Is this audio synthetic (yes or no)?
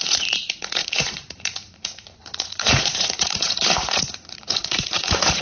yes